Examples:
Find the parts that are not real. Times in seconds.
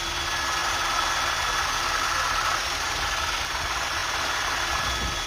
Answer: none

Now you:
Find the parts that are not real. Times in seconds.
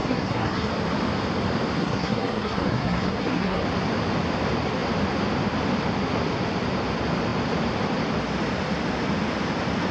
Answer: 0.0-0.7 (codec, SNAC); 1.8-3.6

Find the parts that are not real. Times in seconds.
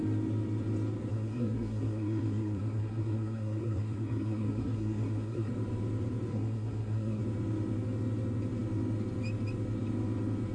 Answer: 1.1-5.5 (codec, SNAC); 6.3-7.2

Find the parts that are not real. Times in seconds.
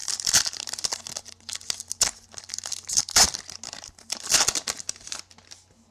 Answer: none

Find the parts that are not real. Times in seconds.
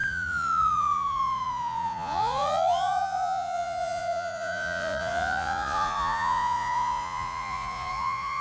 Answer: 0.0-8.4 (vocoder, Vocos)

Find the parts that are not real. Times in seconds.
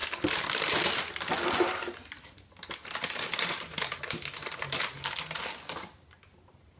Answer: none